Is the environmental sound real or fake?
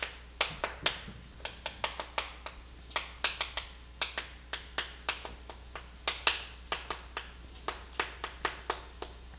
real